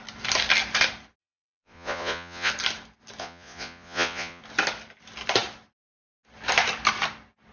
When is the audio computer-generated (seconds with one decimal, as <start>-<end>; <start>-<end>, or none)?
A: 1.2-2.5; 3.2-4.4